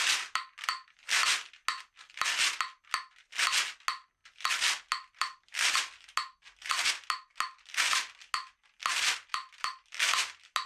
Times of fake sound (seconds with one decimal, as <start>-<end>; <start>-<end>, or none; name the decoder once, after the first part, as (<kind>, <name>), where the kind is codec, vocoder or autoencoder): 9.3-9.9 (vocoder, BigVGAN v2)